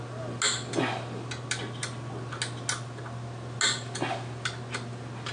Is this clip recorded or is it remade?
recorded